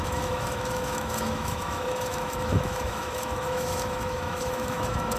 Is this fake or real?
fake